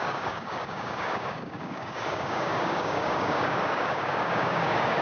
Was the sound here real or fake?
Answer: fake